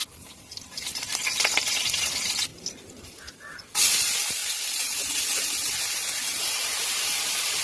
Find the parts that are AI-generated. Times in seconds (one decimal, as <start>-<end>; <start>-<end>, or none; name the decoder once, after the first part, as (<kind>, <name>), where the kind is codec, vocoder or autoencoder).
0.0-2.5 (vocoder, BigVGAN v2); 3.3-4.4; 6.3-7.6